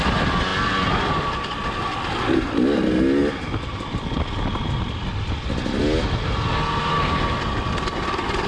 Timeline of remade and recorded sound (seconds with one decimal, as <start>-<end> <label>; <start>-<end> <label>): 0.0-8.5 recorded